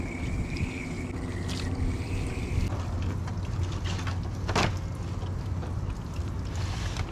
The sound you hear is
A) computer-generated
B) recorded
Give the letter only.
B